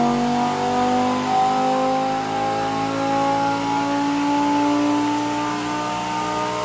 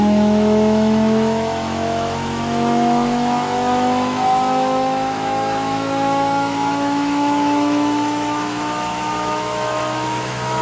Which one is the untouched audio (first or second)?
first